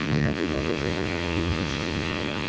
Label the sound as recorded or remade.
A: remade